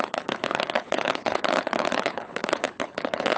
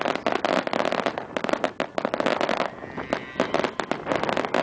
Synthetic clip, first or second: first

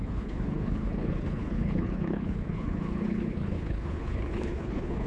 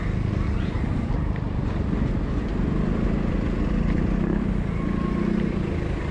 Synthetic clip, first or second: first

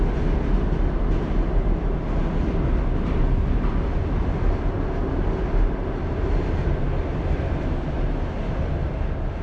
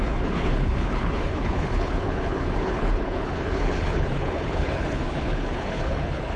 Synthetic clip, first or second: second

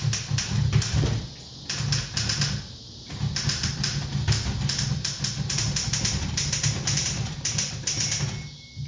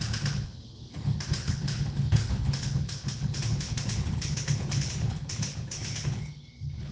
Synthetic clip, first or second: second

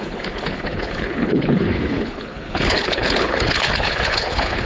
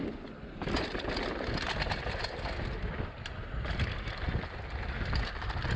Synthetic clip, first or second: first